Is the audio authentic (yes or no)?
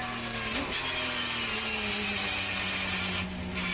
yes